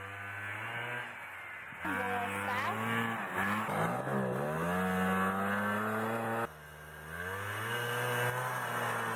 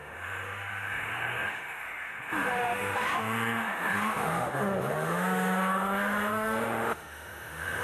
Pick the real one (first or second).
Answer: first